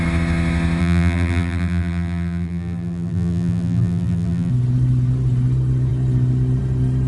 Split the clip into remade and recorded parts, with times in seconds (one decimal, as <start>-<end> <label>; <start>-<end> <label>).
0.0-0.8 recorded; 0.8-4.5 remade; 4.5-7.1 recorded